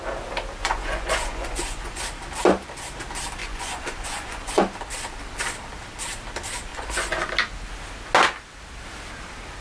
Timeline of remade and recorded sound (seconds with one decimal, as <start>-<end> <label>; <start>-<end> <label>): 0.0-0.6 recorded; 0.6-2.0 remade; 2.0-3.4 recorded; 3.4-4.6 remade; 4.6-6.7 recorded; 6.7-7.3 remade; 7.3-9.6 recorded